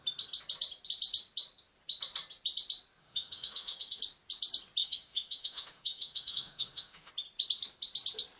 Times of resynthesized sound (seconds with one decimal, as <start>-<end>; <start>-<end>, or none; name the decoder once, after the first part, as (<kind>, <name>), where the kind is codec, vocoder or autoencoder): 3.0-4.0 (autoencoder, DAC-VAE); 4.8-7.1